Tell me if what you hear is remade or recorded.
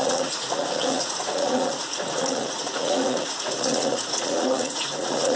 remade